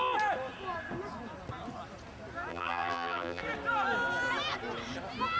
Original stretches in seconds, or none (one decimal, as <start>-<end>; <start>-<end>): 0.0-2.5; 3.4-5.4